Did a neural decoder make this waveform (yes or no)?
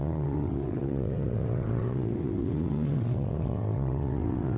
yes